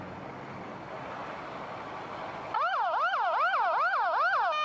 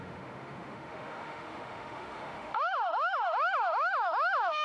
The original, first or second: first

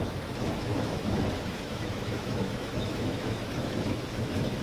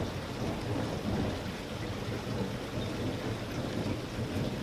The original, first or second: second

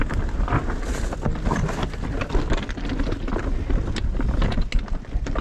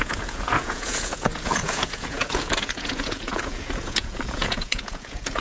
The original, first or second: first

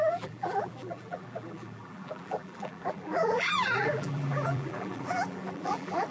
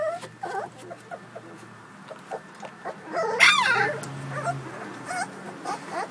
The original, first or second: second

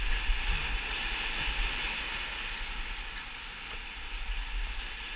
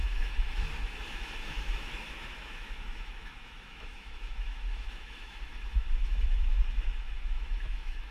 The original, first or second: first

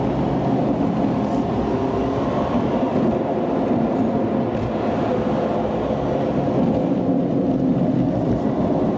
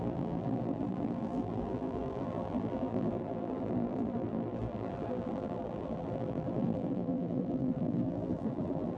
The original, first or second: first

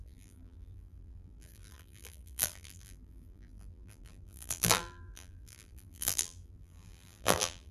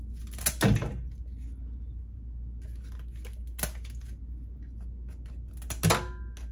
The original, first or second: second